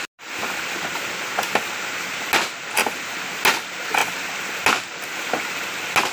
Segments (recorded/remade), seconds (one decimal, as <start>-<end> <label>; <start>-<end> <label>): 0.0-6.1 recorded

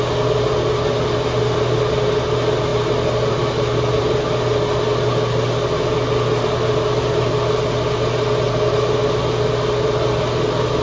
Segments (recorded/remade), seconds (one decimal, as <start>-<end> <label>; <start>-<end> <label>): 0.0-10.8 recorded